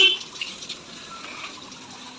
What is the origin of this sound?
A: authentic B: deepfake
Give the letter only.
A